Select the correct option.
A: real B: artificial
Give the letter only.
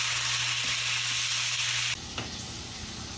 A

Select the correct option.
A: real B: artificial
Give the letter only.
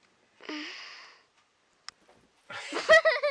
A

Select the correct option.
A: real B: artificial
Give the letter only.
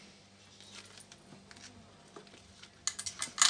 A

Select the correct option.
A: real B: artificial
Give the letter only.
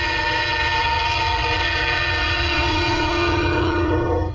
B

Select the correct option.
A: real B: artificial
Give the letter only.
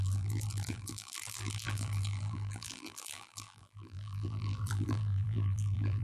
B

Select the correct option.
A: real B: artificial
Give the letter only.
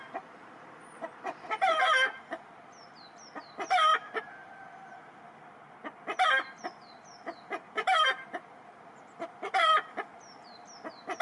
B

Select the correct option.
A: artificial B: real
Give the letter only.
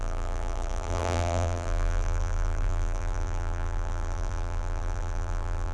A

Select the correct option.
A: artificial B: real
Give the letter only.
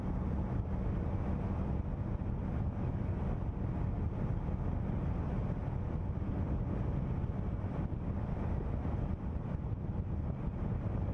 B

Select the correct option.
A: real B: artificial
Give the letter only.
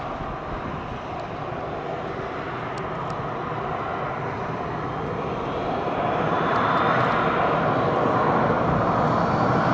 A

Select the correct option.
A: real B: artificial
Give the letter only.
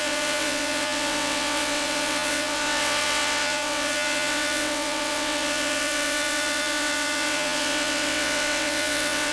B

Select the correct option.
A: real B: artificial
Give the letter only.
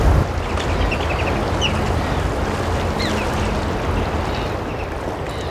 A